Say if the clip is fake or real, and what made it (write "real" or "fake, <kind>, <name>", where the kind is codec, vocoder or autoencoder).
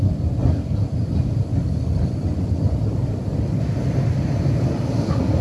real